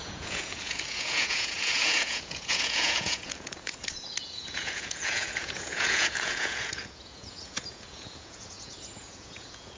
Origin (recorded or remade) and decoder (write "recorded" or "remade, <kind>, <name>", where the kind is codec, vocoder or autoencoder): remade, vocoder, Vocos